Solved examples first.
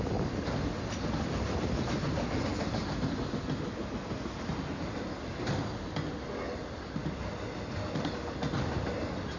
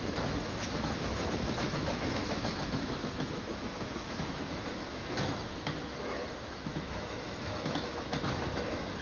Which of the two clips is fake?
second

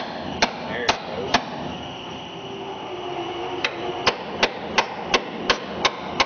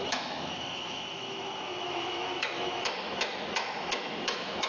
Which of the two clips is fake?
second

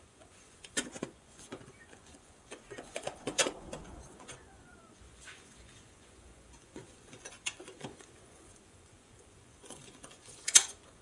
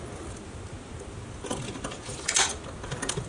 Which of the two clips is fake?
first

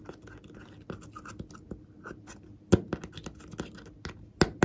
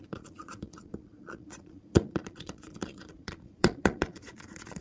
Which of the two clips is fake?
second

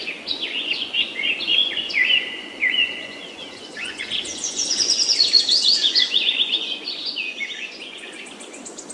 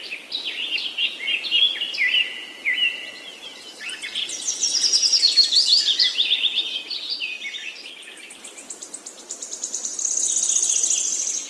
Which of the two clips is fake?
first